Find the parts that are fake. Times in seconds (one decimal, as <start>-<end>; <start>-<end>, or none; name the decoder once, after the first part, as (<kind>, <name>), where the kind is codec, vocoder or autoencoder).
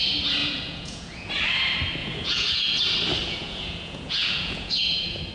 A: 0.4-1.3 (vocoder, Vocos); 2.0-2.8; 3.2-5.3